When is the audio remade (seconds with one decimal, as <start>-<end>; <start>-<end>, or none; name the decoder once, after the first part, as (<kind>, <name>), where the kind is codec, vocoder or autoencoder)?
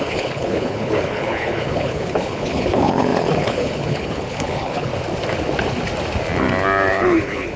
0.0-4.9 (codec, HILCodec); 6.9-7.6